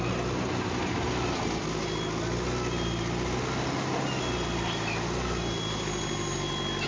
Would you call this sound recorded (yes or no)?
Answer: yes